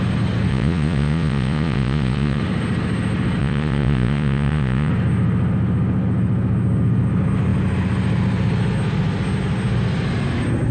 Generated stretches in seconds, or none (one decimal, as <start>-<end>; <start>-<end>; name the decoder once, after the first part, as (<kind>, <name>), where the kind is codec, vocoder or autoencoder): 0.5-2.4 (vocoder, Vocos); 3.4-4.9

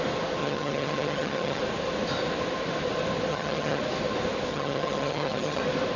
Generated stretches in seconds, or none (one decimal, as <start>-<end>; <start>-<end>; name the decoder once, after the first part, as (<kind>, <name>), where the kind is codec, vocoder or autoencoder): 0.4-1.6 (vocoder, HiFi-GAN); 3.3-3.8; 4.5-5.6